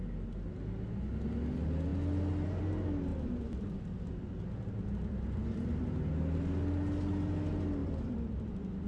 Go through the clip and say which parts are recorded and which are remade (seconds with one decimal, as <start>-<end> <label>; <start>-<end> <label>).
0.0-3.1 recorded; 3.1-6.1 remade; 6.1-7.8 recorded; 7.8-8.9 remade